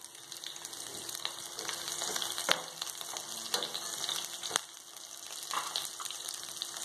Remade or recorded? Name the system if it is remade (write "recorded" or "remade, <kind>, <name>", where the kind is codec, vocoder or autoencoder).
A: recorded